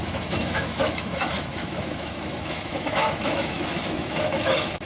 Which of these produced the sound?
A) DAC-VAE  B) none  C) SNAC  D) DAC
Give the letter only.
A